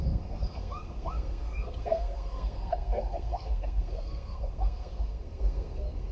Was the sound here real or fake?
fake